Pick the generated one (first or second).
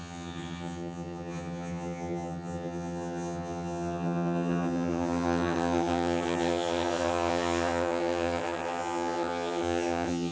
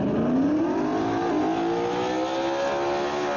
first